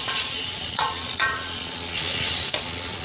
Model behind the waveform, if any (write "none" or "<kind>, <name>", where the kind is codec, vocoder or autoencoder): vocoder, Vocos